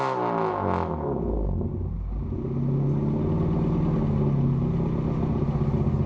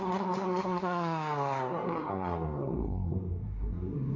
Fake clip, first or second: second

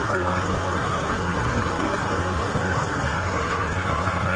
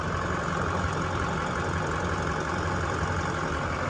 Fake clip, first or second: first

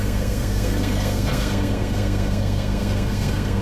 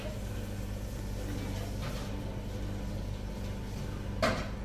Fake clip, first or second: first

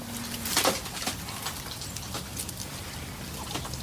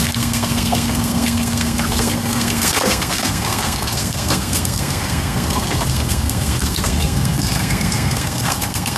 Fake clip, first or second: second